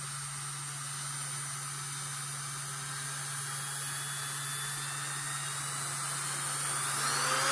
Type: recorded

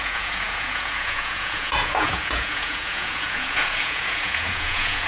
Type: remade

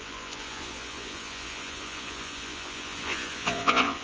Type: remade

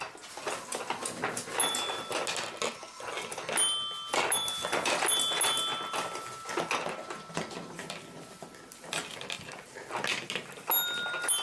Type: recorded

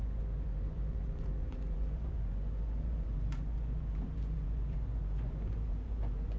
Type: remade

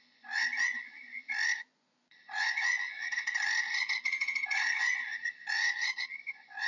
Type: remade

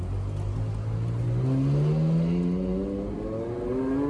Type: recorded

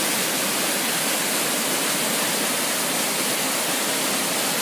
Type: recorded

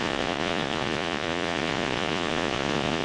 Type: remade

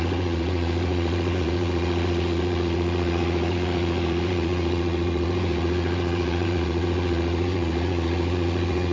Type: remade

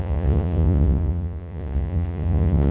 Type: remade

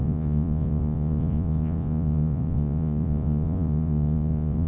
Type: remade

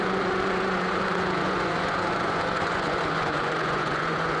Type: remade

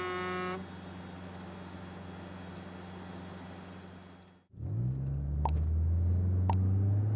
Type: recorded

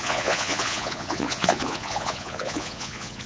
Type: remade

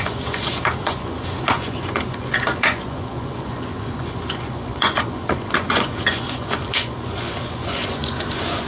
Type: remade